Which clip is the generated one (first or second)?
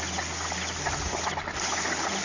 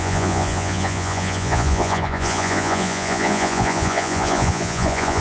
second